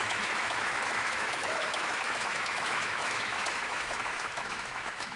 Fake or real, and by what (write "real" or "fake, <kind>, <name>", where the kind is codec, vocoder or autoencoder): fake, autoencoder, DAC-VAE